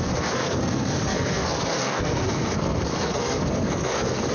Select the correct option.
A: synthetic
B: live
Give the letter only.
A